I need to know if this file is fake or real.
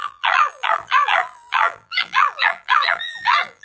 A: fake